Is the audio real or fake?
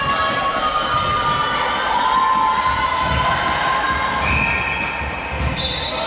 real